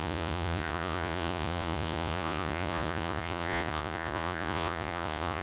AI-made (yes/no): yes